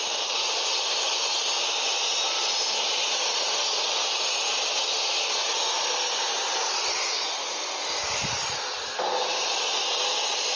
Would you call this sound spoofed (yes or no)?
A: no